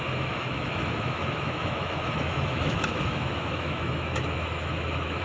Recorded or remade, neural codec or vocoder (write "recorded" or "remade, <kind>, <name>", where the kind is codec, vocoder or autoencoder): remade, autoencoder, DAC-VAE